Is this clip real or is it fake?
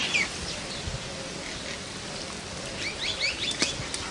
real